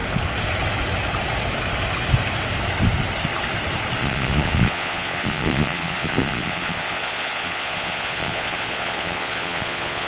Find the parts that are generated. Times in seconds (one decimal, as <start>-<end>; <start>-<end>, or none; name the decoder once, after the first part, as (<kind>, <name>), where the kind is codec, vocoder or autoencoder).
4.0-10.1 (vocoder, Vocos)

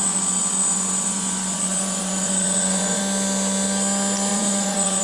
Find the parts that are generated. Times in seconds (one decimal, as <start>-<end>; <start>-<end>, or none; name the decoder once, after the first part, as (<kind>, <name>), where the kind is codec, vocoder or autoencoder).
0.0-3.0 (vocoder, Vocos); 4.3-5.0

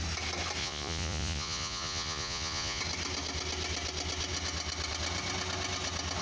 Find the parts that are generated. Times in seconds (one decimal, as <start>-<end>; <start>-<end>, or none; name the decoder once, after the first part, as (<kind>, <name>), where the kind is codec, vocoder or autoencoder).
0.6-2.8 (vocoder, Vocos)

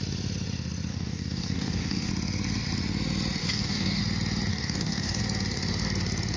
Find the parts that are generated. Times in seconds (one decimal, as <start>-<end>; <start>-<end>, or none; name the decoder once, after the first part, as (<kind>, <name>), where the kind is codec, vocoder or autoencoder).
0.9-2.1 (codec, DAC); 3.4-4.0; 4.5-5.2